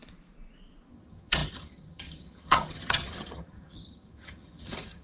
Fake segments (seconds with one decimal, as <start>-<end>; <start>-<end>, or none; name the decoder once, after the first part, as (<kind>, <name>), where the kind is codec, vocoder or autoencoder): 0.9-5.0 (vocoder, HiFi-GAN)